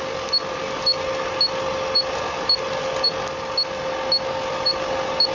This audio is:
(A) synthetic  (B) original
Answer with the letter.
B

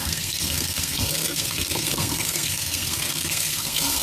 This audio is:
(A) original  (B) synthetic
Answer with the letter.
B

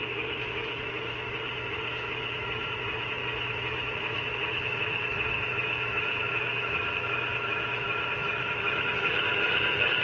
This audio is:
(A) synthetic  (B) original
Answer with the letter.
A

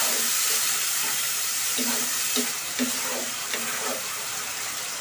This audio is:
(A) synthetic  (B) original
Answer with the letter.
A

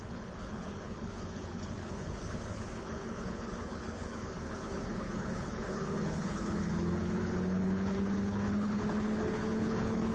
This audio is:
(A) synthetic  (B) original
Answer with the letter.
A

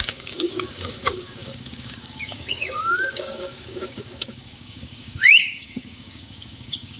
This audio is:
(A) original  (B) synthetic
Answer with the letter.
B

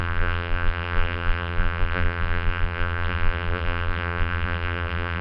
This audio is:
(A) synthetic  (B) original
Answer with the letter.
A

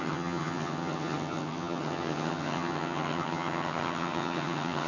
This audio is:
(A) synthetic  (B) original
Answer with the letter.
A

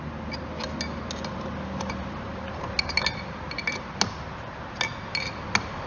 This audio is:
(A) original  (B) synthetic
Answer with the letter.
A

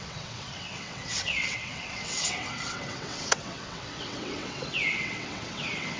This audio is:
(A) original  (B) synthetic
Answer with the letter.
B